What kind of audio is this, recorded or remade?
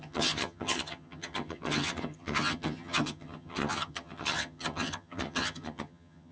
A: remade